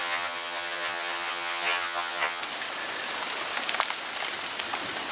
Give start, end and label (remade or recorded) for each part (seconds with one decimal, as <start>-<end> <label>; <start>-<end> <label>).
0.0-2.4 remade; 2.4-5.1 recorded